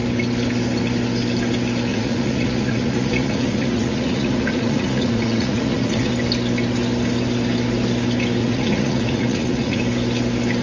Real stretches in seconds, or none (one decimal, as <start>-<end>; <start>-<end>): 0.0-1.9; 6.1-8.4; 9.8-10.6